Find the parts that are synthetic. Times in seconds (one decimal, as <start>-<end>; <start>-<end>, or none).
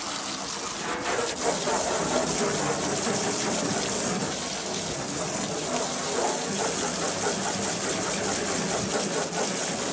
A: none